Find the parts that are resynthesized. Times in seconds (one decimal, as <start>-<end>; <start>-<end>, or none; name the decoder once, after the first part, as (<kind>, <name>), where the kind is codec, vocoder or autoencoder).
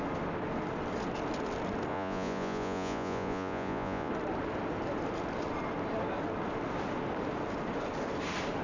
1.9-4.1 (vocoder, Vocos)